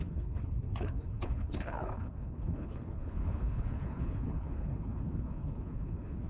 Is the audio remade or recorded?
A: remade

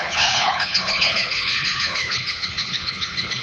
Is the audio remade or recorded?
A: remade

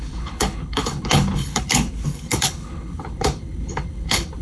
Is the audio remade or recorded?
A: remade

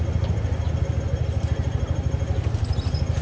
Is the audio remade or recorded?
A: recorded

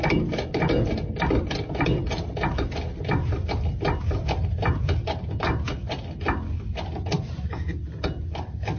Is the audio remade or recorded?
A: recorded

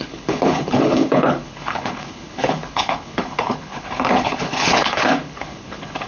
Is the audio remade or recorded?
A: remade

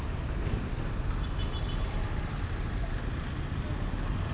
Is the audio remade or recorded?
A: recorded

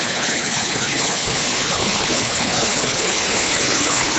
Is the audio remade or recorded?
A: remade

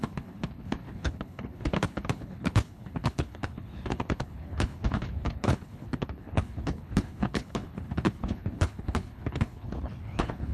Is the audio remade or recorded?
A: remade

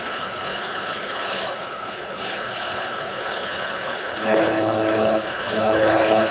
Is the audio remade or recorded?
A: remade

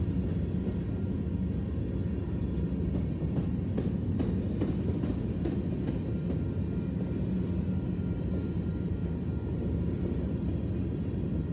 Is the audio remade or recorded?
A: recorded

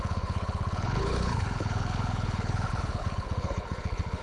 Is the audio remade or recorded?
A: remade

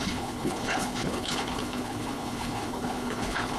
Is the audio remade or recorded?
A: remade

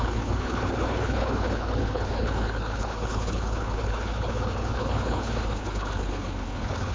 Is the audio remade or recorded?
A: remade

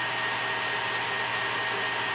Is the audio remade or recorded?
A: recorded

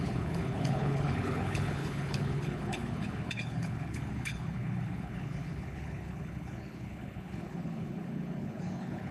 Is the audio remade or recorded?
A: remade